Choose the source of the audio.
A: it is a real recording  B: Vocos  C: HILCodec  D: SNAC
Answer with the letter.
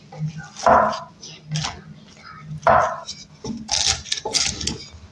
A